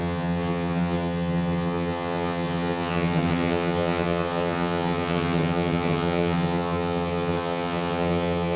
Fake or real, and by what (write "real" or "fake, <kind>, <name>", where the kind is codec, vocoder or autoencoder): fake, vocoder, HiFi-GAN